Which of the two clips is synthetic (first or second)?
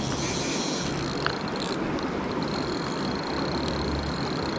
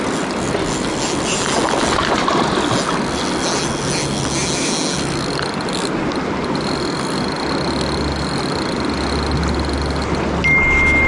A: first